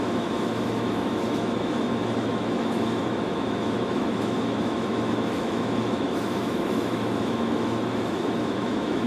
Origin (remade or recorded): remade